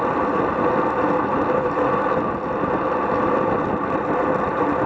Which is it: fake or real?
real